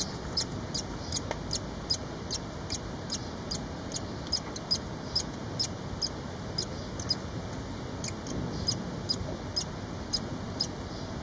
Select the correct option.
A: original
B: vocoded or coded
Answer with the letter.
A